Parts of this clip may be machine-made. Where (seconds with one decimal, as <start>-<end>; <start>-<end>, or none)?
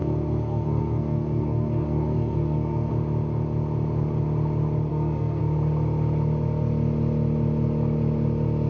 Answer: 0.0-2.9; 4.9-5.4